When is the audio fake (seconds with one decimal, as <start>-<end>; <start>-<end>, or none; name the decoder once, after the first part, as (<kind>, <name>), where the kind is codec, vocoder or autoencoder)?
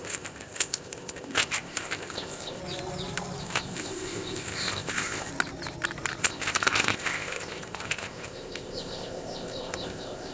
0.0-2.6 (codec, ZipCodec); 3.4-5.3; 6.2-10.3